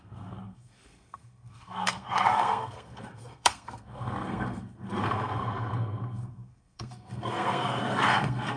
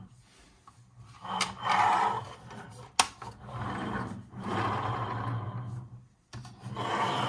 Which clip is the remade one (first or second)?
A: first